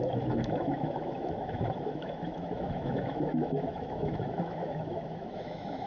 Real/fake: fake